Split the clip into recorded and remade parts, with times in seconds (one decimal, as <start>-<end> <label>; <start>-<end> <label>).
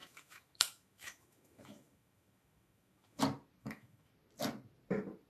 0.0-3.2 remade; 3.2-3.6 recorded; 3.6-4.1 remade; 4.1-5.3 recorded